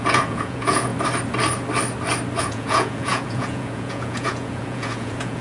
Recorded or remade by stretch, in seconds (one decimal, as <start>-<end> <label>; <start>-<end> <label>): 0.0-0.9 remade; 0.9-2.4 recorded; 2.4-5.4 remade